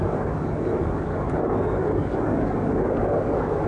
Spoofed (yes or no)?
yes